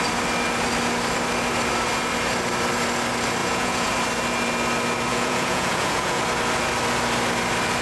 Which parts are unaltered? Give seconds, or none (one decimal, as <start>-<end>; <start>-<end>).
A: 0.0-3.4; 3.9-5.1; 6.2-7.8